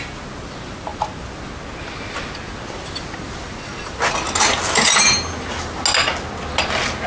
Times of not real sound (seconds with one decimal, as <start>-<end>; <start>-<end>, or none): none